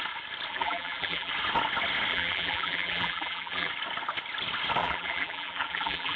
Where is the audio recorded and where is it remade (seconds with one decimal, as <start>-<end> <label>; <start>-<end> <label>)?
0.0-0.5 recorded; 0.5-1.3 remade; 1.3-2.1 recorded; 2.1-3.7 remade; 3.7-4.8 recorded; 4.8-6.2 remade